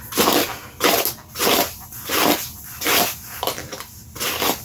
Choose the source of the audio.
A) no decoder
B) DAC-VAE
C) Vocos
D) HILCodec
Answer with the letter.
A